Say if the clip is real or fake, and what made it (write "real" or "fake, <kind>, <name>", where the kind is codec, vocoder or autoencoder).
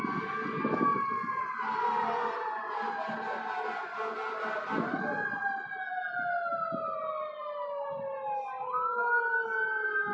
real